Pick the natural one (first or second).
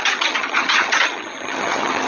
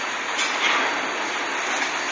second